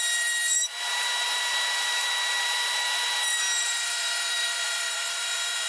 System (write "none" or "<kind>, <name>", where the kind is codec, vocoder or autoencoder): vocoder, BigVGAN v2